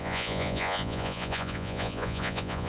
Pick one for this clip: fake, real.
fake